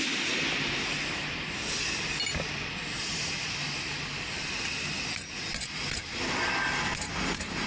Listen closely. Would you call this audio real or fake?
real